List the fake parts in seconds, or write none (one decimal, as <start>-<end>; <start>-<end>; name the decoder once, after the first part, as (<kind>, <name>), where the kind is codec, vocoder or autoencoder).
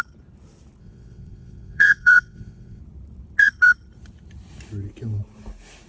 0.8-2.8 (vocoder, WaveNeXt)